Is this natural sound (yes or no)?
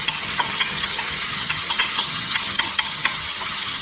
no